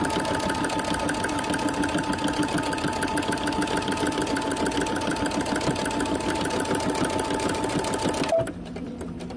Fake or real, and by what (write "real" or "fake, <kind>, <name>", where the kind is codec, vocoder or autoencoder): real